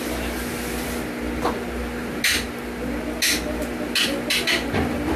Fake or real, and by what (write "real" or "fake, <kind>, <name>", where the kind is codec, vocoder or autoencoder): real